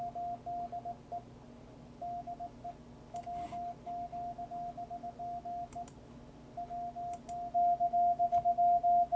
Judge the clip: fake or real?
real